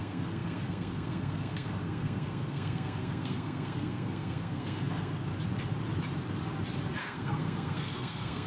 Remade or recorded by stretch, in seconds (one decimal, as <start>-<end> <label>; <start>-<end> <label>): 0.0-5.3 remade; 5.3-7.0 recorded; 7.0-8.5 remade